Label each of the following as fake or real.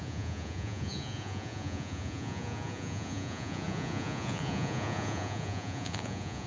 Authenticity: fake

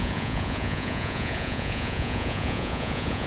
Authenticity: fake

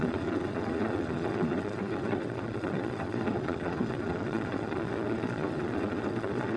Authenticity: fake